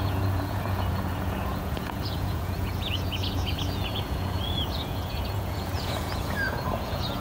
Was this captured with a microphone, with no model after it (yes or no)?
no